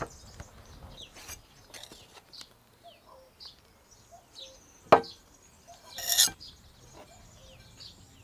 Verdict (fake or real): real